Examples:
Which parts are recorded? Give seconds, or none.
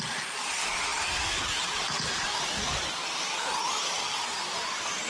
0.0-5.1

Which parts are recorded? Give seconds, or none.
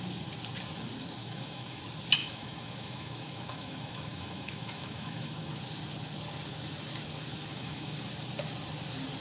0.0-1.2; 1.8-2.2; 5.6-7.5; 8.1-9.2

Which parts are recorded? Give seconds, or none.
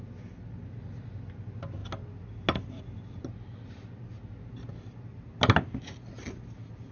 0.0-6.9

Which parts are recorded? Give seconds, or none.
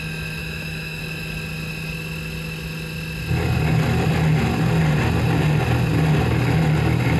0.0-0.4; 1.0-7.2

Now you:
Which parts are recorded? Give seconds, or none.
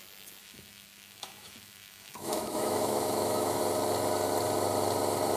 0.0-0.4; 3.6-5.4